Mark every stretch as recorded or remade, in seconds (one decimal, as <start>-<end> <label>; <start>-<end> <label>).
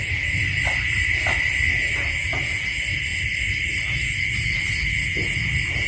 0.0-5.9 recorded